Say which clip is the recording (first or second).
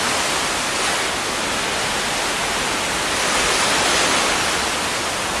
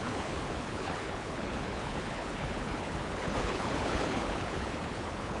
first